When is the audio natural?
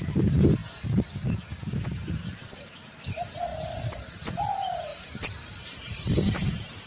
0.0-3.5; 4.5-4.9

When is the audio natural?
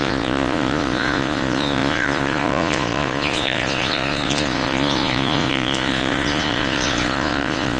none